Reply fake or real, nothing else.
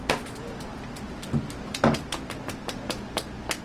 real